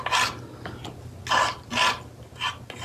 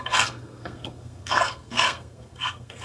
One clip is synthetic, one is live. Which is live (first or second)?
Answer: first